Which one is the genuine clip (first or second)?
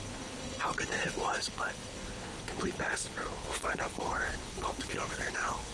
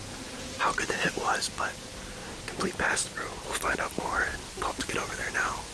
second